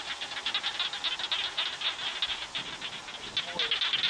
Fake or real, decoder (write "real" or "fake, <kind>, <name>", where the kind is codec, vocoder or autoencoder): real